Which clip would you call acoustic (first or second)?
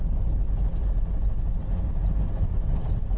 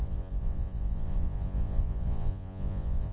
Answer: first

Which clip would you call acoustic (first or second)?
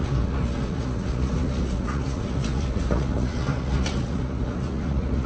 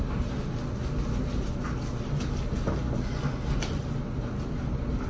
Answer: second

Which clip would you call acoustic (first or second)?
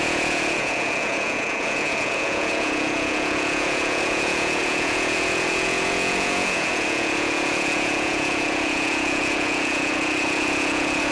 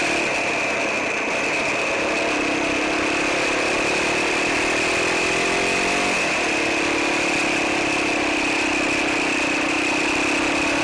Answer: second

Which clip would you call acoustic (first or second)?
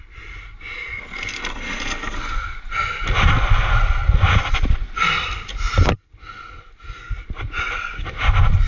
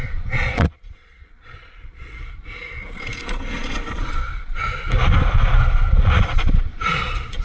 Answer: first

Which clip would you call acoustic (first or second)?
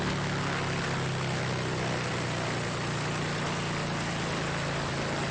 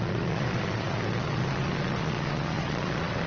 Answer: first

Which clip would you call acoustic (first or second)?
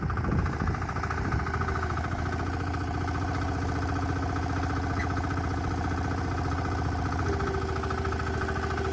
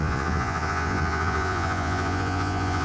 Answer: first